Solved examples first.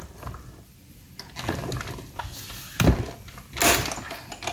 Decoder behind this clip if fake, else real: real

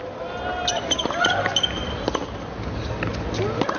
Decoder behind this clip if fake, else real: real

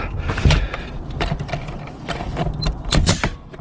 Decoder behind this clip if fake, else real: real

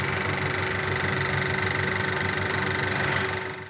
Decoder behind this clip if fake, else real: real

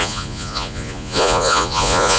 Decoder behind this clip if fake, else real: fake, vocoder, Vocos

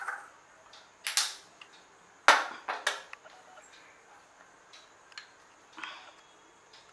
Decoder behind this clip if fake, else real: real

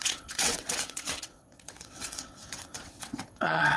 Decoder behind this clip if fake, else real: fake, vocoder, WaveNeXt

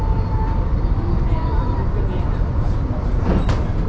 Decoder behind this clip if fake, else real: real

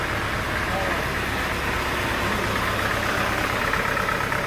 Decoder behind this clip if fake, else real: real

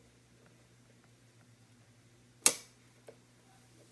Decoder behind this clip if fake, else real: real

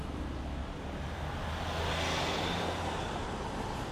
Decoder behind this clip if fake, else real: real